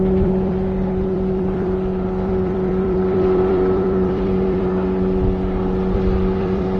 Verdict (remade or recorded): remade